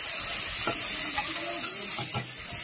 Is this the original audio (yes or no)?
yes